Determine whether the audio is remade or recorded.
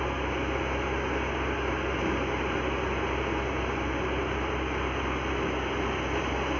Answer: recorded